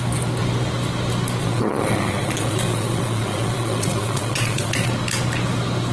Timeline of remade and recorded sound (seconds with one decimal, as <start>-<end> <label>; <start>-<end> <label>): 0.0-1.4 recorded; 1.4-4.9 remade; 4.9-5.9 recorded

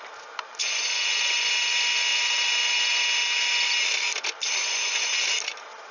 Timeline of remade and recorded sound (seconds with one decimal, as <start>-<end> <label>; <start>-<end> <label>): 0.0-0.6 recorded; 0.6-1.5 remade; 1.5-2.1 recorded; 2.1-3.0 remade; 3.0-4.6 recorded; 4.6-5.1 remade; 5.1-5.9 recorded

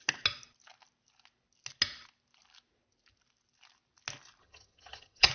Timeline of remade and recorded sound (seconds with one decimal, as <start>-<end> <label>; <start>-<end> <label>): 0.0-4.4 recorded; 4.4-5.3 remade

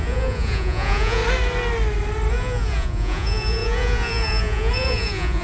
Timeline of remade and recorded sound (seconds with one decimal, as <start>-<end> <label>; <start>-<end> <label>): 0.0-1.2 remade; 1.2-2.3 recorded; 2.3-5.4 remade

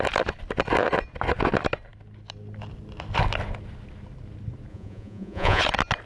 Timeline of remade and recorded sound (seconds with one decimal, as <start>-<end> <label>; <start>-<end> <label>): 0.0-4.7 recorded; 4.7-5.6 remade; 5.6-6.1 recorded

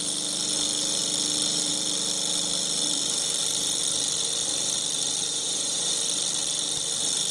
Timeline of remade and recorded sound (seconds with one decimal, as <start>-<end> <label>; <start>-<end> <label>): 0.0-5.3 recorded; 5.3-5.9 remade; 5.9-7.3 recorded

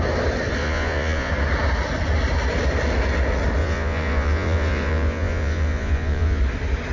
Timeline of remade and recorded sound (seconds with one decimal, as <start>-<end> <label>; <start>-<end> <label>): 0.0-0.6 recorded; 0.6-1.3 remade; 1.3-3.6 recorded; 3.6-6.4 remade; 6.4-6.9 recorded

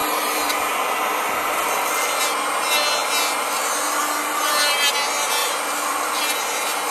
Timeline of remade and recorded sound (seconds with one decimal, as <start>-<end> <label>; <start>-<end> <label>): 0.0-0.7 remade; 0.7-5.4 recorded; 5.4-6.2 remade; 6.2-6.9 recorded